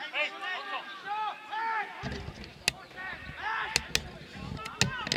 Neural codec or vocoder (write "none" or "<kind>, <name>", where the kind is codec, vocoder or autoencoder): none